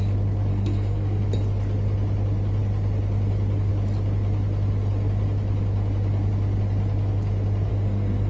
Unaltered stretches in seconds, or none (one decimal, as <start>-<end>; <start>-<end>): 0.0-0.5; 1.2-7.7